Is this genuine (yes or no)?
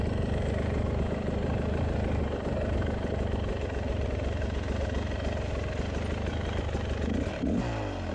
yes